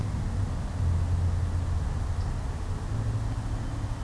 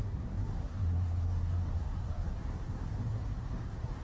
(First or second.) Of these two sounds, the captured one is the first